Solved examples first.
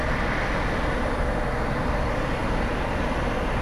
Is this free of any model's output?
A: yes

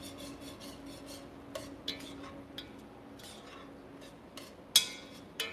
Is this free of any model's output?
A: yes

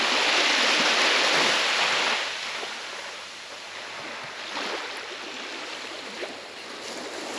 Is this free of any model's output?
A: yes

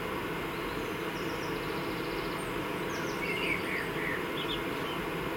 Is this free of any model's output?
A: yes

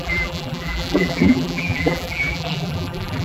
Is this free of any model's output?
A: no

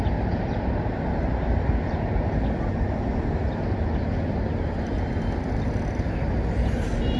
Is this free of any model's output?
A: yes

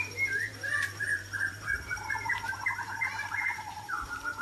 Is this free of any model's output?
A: no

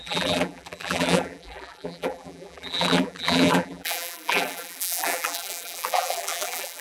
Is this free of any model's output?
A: no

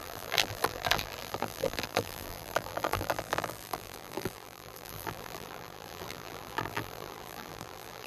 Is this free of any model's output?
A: no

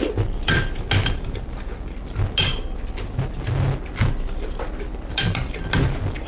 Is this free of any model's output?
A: yes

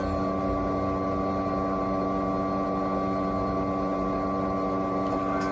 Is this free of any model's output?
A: yes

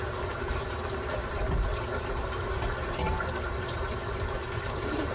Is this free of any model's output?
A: no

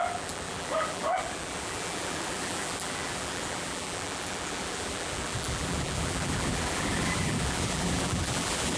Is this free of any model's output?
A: no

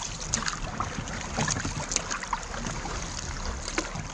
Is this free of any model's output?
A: yes